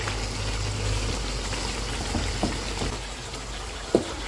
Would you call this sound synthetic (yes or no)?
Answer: no